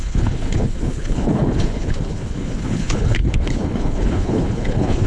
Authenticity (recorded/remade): remade